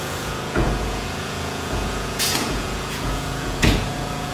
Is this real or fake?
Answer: fake